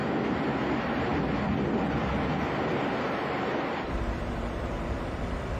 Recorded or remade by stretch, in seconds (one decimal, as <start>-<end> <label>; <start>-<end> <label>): 0.0-0.7 recorded; 0.7-1.1 remade; 1.1-4.5 recorded; 4.5-5.6 remade